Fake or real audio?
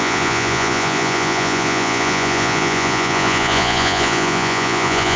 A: fake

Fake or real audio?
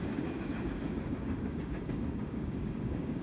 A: fake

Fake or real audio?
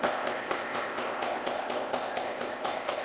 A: fake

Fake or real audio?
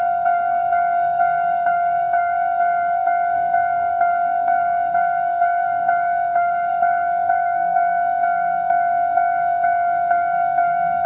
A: fake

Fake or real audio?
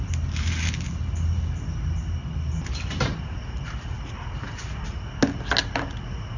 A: real